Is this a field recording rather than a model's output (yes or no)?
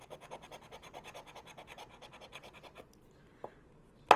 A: yes